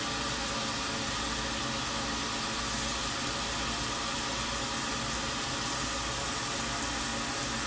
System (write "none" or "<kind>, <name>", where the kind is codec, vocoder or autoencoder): none